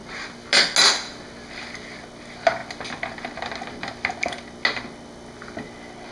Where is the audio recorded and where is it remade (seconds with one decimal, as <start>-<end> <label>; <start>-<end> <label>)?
0.0-6.1 recorded